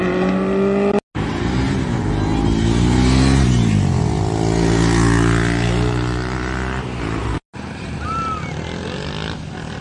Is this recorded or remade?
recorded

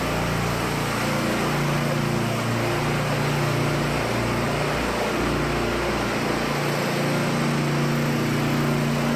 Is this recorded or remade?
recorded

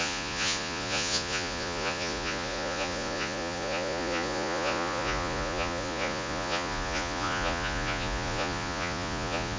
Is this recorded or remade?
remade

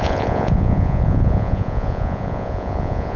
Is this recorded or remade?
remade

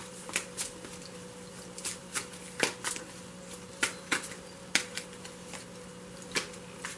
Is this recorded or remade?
recorded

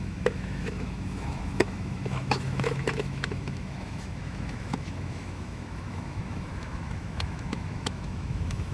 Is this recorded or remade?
remade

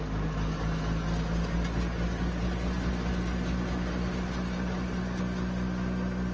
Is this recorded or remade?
recorded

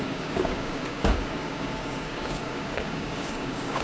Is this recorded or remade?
remade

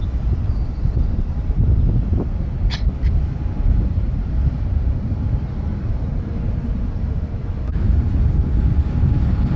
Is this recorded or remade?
recorded